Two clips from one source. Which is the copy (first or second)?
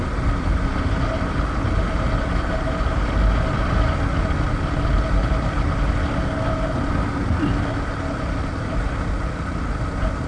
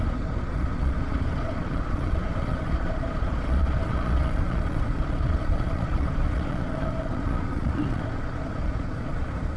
second